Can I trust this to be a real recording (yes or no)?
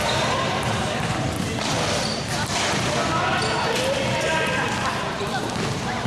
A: yes